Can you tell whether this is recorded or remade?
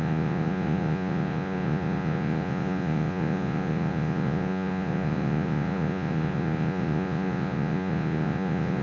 remade